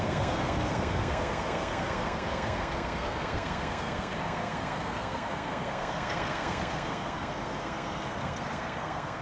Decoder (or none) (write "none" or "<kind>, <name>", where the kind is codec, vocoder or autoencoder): codec, SNAC